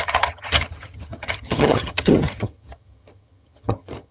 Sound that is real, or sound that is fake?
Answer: fake